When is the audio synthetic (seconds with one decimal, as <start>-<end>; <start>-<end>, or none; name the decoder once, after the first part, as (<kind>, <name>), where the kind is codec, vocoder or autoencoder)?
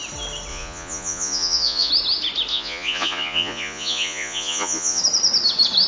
0.5-1.9 (vocoder, Vocos); 2.5-5.0